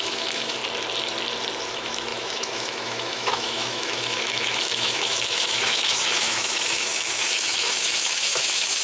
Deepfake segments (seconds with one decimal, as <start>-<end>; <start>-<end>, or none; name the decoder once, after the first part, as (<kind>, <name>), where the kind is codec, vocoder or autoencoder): 0.0-0.6 (autoencoder, DAC-VAE); 1.7-8.8